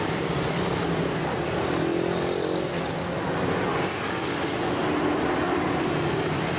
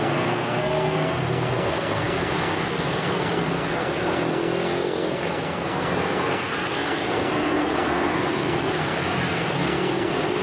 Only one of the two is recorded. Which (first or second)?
first